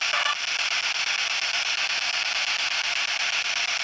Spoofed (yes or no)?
no